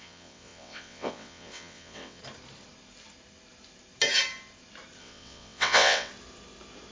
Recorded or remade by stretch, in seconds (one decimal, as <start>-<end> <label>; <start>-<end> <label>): 0.0-2.2 remade; 2.2-5.0 recorded; 5.0-6.1 remade; 6.1-6.9 recorded